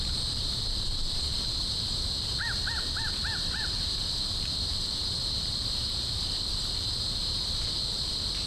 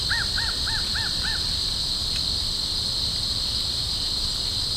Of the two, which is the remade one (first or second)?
first